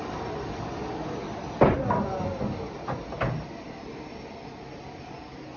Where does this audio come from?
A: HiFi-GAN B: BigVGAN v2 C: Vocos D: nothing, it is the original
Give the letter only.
D